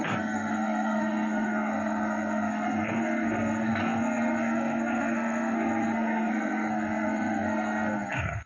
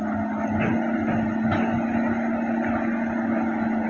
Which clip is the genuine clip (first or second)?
second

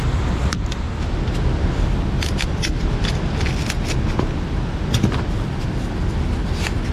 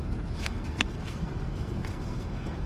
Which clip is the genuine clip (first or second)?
first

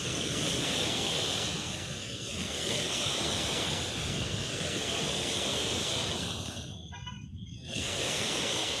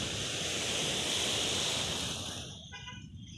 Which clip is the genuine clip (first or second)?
second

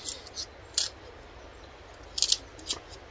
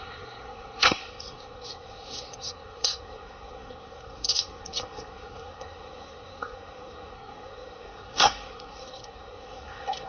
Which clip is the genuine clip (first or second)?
first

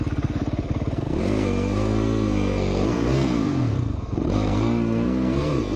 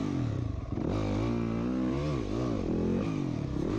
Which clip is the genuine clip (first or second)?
second